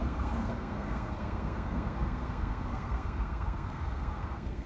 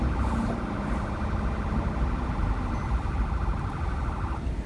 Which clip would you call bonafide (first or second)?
second